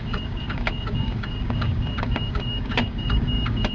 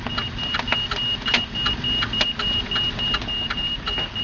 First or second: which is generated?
first